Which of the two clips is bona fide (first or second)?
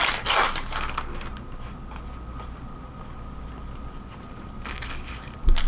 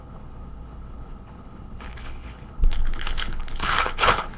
first